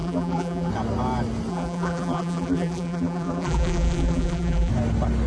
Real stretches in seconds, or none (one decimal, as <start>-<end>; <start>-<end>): 0.7-1.5; 4.7-5.3

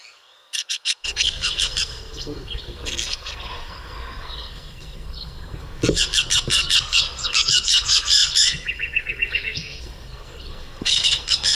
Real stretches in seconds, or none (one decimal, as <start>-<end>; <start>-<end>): none